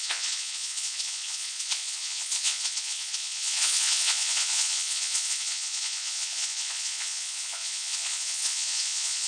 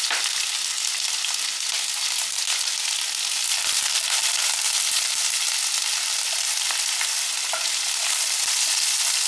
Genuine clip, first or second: second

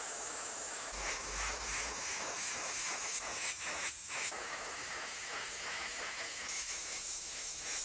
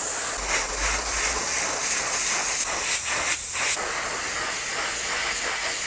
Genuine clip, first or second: second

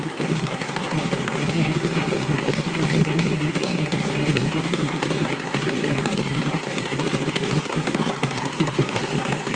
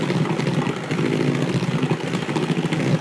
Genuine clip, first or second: second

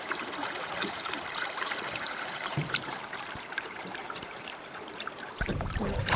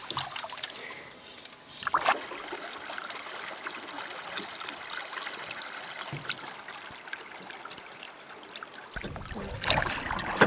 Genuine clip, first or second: second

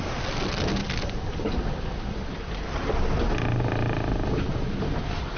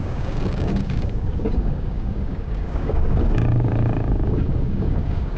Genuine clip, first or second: first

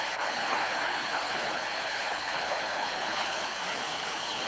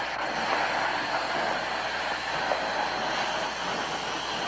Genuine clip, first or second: second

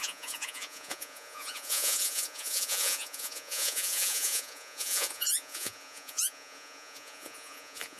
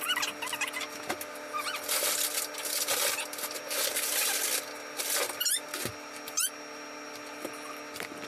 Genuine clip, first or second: second